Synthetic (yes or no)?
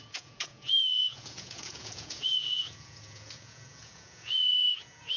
yes